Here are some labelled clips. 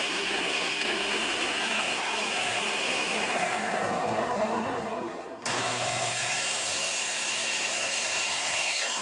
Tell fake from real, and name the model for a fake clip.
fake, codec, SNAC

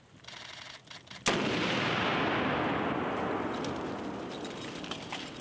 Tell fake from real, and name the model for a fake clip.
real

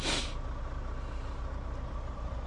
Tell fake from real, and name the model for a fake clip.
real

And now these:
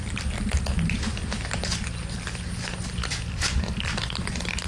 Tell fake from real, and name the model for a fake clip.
real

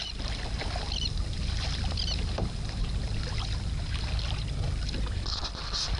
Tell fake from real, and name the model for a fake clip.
real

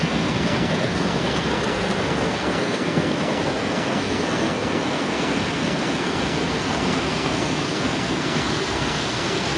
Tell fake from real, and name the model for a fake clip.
fake, codec, SNAC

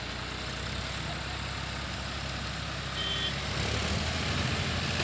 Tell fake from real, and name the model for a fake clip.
real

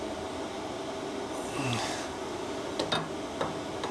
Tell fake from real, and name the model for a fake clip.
real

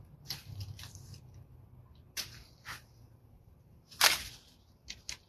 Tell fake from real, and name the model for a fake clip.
real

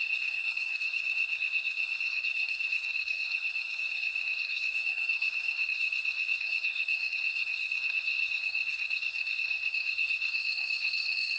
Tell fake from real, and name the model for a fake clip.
fake, codec, SNAC